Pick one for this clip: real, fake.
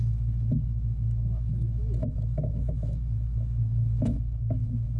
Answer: fake